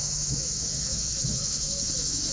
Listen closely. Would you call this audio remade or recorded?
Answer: remade